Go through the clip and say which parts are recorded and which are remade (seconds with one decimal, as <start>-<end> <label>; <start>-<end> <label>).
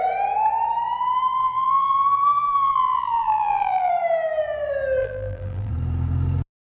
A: 0.0-1.4 recorded; 1.4-3.9 remade; 3.9-5.0 recorded; 5.0-5.7 remade; 5.7-6.7 recorded